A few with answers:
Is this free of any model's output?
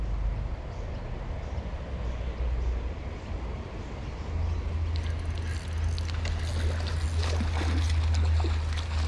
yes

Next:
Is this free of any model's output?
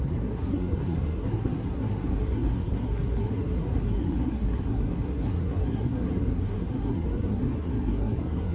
no